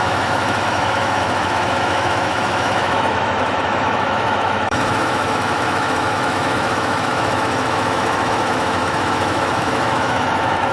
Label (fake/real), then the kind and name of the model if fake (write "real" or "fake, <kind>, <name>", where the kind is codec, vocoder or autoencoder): fake, autoencoder, DAC-VAE